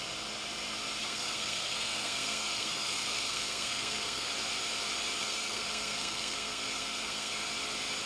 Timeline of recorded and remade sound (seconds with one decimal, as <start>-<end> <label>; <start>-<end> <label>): 0.0-1.0 recorded; 1.0-4.3 remade; 4.3-5.2 recorded; 5.2-7.3 remade; 7.3-8.1 recorded